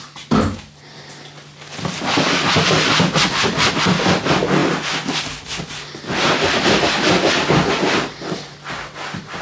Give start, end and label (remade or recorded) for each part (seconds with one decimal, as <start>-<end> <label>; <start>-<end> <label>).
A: 0.0-9.4 recorded